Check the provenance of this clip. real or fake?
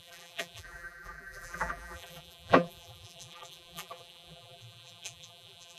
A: fake